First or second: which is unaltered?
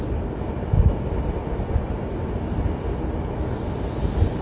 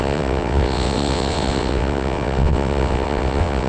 first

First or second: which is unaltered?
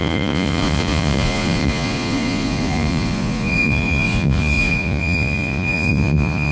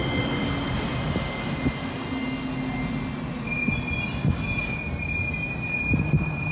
second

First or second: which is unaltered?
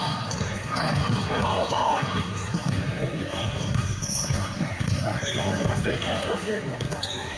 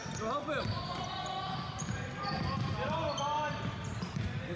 second